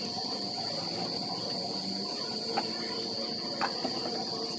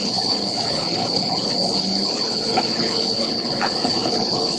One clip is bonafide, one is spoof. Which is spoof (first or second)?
second